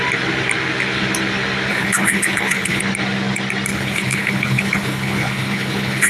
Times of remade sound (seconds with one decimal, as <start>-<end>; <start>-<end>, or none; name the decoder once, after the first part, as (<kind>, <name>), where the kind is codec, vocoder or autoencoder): 1.7-2.8 (codec, HILCodec); 3.7-6.1